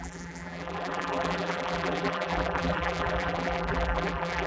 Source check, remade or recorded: remade